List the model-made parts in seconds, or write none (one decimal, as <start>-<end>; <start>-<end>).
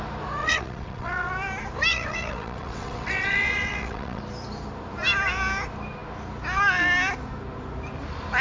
0.4-1.3; 1.9-4.2